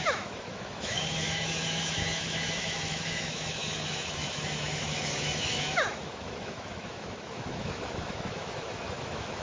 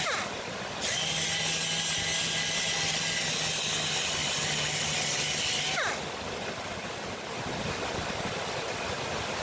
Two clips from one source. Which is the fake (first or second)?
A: first